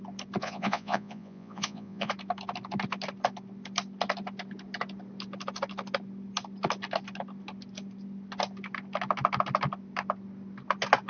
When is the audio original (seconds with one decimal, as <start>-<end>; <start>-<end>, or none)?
0.0-0.4; 2.1-11.1